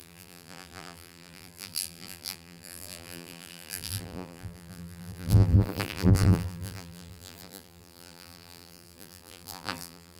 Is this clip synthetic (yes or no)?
yes